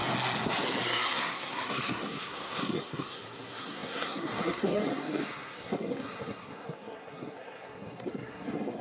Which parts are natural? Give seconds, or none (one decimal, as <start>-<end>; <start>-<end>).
0.0-0.8